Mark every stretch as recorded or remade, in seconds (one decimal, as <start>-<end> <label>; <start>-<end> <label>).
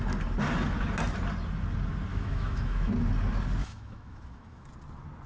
0.0-2.1 recorded; 2.1-2.9 remade; 2.9-3.6 recorded; 3.6-4.7 remade; 4.7-5.3 recorded